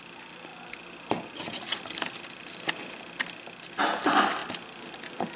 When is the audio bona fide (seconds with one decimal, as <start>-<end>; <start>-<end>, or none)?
0.0-5.4